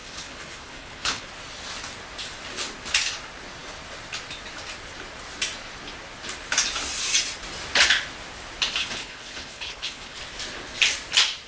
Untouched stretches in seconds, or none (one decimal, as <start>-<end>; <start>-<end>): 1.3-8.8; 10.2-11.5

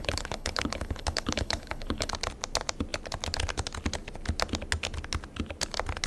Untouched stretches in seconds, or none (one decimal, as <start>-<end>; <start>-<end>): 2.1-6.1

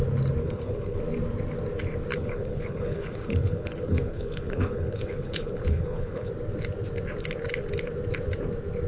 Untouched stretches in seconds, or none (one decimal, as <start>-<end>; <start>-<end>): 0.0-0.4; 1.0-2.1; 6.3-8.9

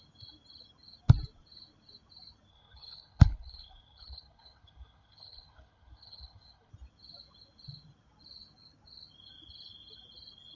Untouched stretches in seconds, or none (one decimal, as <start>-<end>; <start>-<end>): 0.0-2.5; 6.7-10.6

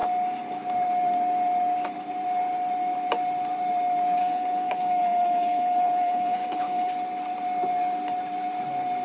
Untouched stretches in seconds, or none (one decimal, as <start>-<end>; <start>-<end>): 0.0-4.2; 6.9-9.0

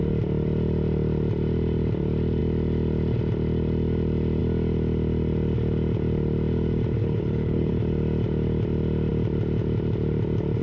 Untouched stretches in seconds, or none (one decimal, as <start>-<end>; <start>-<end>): 0.0-7.0; 7.7-10.6

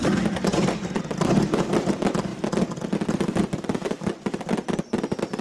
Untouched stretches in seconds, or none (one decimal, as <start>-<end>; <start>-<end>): 0.0-5.4

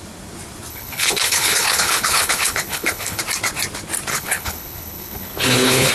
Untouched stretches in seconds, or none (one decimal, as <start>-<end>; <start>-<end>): 0.0-0.7; 3.2-4.1